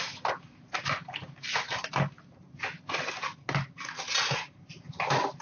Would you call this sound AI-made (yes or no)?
no